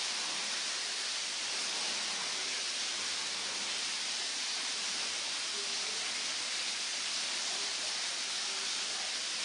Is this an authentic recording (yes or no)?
yes